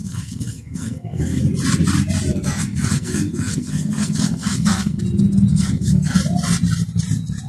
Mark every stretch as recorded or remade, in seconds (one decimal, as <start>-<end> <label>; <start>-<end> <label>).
0.0-1.4 remade; 1.4-2.3 recorded; 2.3-5.0 remade; 5.0-5.5 recorded; 5.5-6.2 remade; 6.2-7.5 recorded